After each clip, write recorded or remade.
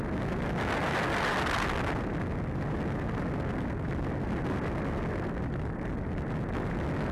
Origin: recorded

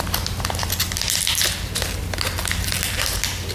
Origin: recorded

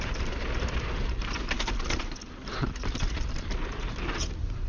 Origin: remade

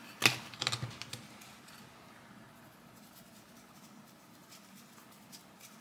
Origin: recorded